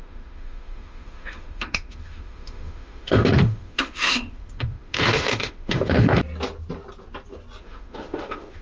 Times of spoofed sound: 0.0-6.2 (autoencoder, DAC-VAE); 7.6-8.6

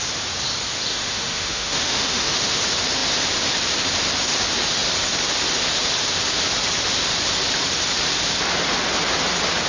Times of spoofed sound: 0.9-2.6 (autoencoder, DAC-VAE)

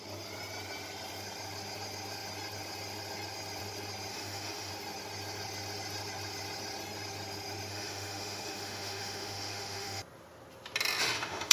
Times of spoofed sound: 4.1-4.7 (autoencoder, DAC-VAE); 7.7-10.0; 11.0-11.5